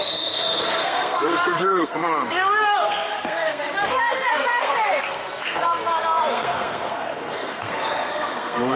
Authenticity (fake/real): fake